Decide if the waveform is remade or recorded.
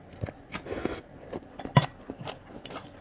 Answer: remade